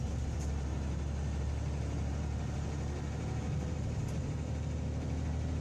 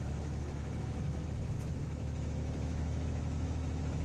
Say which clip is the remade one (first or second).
second